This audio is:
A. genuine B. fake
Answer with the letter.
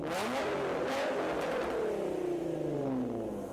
A